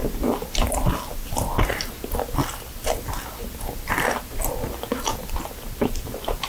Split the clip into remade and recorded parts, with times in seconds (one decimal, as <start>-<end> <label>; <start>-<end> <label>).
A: 0.0-1.3 remade; 1.3-6.5 recorded